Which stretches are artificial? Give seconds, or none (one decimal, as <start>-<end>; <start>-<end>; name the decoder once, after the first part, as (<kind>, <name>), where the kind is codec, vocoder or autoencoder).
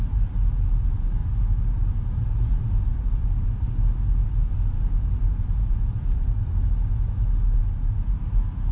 none